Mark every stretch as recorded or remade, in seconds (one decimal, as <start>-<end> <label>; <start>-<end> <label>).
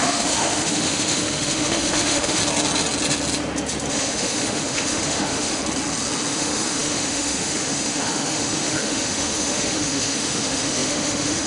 0.0-2.4 remade; 2.4-3.9 recorded; 3.9-5.6 remade; 5.6-6.3 recorded; 6.3-11.5 remade